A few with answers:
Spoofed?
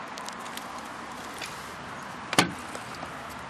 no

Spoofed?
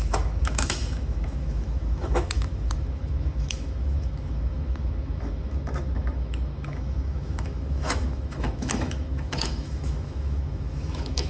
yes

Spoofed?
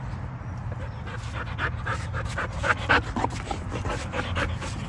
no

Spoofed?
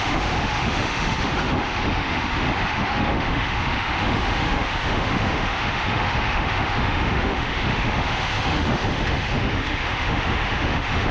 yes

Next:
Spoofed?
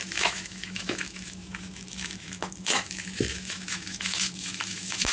yes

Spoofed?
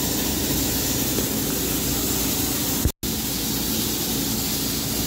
no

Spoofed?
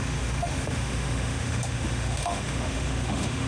yes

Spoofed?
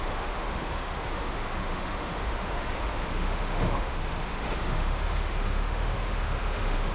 yes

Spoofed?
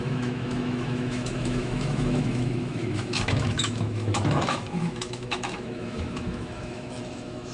yes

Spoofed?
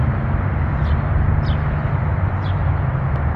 no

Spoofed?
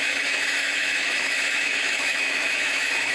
yes